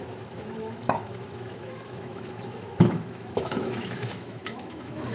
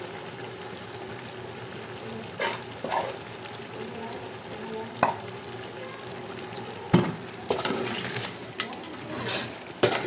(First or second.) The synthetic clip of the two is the first